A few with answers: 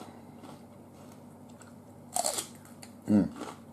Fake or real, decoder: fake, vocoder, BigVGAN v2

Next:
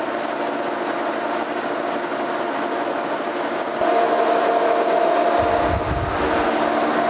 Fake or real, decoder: real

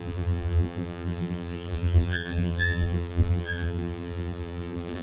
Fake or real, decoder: fake, vocoder, BigVGAN v2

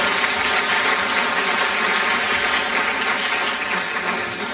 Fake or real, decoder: real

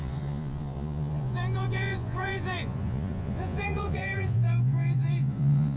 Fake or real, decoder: fake, vocoder, Vocos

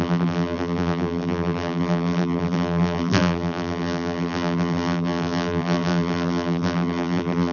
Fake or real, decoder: fake, vocoder, BigVGAN v2